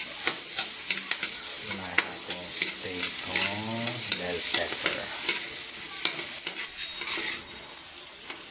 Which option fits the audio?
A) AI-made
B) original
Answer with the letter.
B